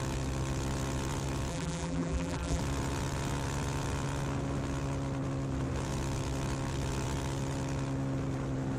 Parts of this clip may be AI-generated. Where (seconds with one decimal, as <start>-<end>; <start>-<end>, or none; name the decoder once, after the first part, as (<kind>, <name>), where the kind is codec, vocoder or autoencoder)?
1.5-2.6 (vocoder, BigVGAN v2)